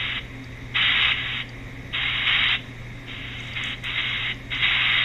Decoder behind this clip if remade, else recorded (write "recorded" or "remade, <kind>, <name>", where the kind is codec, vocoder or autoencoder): recorded